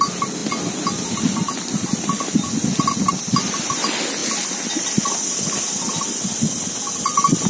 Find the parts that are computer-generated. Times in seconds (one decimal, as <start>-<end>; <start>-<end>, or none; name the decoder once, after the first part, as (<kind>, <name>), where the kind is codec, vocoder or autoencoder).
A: none